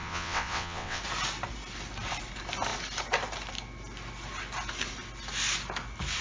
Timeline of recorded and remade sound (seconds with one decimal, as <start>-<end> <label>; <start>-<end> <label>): 0.0-1.0 remade; 1.0-6.2 recorded

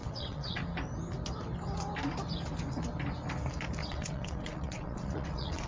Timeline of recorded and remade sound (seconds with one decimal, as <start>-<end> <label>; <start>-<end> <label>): 0.0-0.6 remade; 0.6-3.8 recorded; 3.8-5.7 remade

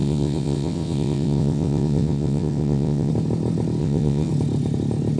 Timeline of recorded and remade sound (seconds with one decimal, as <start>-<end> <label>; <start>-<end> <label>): 0.0-3.1 remade; 3.1-3.8 recorded; 3.8-4.3 remade; 4.3-5.2 recorded